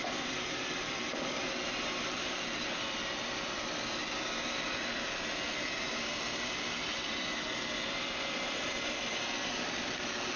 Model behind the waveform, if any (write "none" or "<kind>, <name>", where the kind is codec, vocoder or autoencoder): vocoder, BigVGAN v2